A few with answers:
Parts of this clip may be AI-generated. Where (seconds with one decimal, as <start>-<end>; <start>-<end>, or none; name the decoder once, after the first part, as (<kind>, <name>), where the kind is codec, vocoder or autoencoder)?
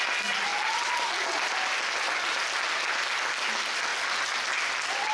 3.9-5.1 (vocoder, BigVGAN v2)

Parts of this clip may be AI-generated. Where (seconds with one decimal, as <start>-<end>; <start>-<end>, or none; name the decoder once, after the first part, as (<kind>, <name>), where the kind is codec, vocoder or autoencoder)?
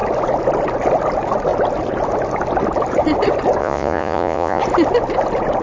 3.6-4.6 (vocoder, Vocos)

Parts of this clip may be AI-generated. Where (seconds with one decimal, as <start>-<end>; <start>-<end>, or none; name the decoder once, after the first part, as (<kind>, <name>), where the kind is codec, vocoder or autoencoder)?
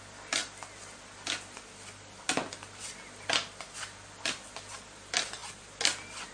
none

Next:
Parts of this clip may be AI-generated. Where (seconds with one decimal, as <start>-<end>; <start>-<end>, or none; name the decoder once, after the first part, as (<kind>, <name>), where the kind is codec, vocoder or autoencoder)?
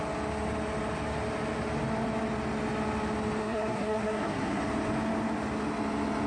3.4-4.6 (codec, SNAC)